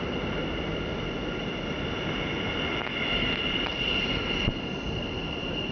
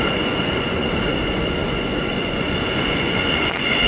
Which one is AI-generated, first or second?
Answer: second